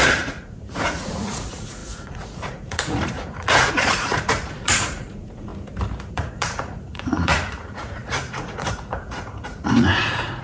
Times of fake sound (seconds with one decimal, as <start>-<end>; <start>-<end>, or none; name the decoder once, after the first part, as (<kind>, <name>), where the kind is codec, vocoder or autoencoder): 0.0-5.5 (vocoder, Vocos); 6.1-10.4